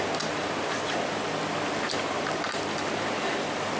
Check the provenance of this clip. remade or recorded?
recorded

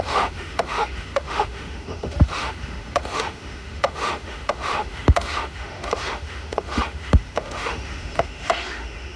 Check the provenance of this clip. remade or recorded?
remade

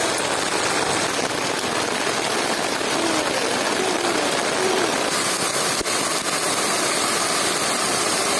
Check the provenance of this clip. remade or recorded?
recorded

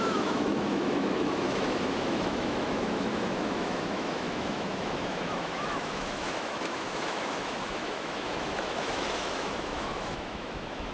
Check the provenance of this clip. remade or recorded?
remade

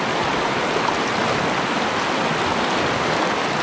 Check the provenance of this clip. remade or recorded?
recorded